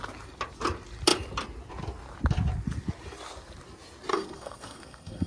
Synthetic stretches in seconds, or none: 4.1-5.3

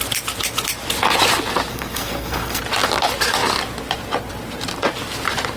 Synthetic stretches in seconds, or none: 1.7-2.6

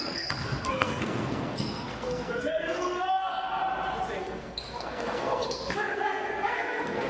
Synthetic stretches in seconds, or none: 0.0-3.6; 4.2-7.1

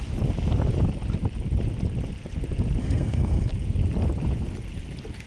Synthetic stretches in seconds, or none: 2.8-3.5